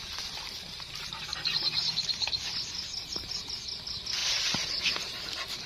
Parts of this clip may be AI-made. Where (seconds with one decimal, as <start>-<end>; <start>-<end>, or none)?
1.3-2.3

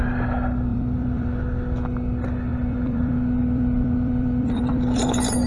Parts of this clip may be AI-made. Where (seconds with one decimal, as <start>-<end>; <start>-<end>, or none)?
0.7-1.3; 2.5-5.5

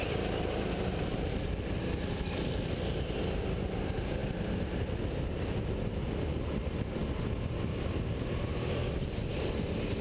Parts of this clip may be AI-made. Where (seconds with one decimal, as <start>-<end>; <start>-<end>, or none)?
none

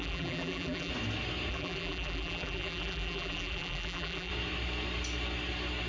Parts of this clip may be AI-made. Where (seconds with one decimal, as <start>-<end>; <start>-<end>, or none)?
0.0-0.9; 1.5-4.3

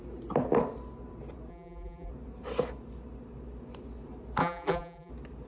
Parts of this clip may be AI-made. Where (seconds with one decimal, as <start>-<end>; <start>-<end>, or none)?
1.5-2.1; 4.4-5.1

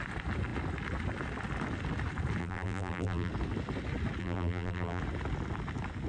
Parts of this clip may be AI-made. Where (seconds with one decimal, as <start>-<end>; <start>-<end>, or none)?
2.4-3.3; 4.2-5.0

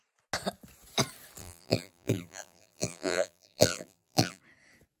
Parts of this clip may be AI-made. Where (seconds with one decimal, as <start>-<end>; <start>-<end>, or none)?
1.4-4.4